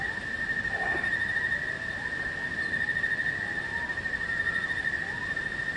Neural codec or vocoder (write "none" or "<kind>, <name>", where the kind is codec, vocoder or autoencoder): none